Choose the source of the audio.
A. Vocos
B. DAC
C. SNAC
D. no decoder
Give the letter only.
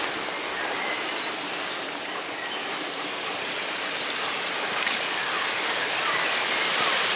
D